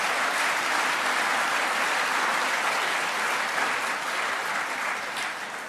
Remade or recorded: recorded